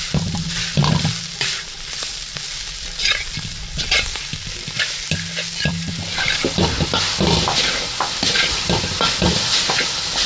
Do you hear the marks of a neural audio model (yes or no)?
no